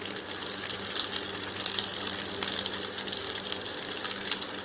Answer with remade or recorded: recorded